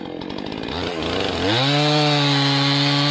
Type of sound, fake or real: real